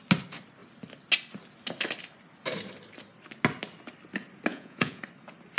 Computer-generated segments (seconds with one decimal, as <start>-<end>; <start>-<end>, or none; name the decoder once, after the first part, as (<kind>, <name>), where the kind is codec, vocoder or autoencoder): 4.5-5.0 (vocoder, Vocos)